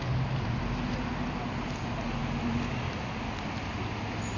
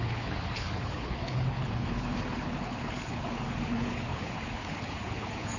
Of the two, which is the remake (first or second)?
second